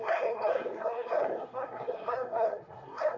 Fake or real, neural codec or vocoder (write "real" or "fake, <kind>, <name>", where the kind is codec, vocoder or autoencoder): fake, codec, SNAC